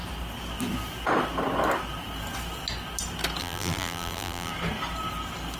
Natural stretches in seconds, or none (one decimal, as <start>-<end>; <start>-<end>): 0.0-3.4; 4.5-5.6